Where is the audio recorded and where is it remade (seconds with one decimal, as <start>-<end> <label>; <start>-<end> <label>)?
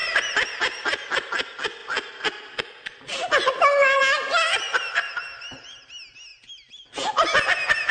0.0-1.3 remade; 1.3-1.8 recorded; 1.8-4.0 remade; 4.0-7.9 recorded